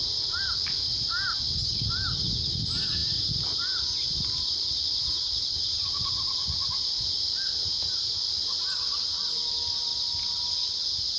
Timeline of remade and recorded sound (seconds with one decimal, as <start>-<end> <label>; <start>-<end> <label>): 0.0-3.0 recorded; 3.0-5.7 remade; 5.7-11.2 recorded